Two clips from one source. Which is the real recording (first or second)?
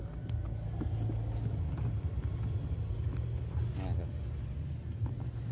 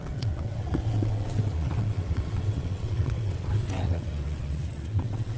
first